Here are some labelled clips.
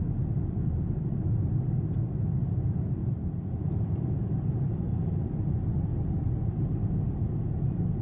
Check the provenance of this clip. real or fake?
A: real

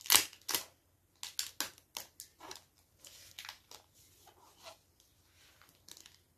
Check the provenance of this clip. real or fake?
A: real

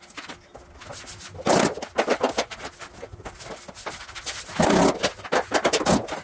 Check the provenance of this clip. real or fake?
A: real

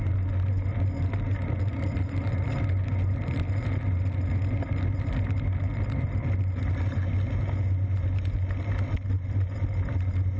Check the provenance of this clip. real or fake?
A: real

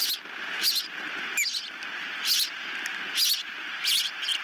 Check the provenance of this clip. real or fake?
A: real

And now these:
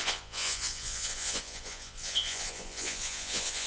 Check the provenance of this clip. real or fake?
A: fake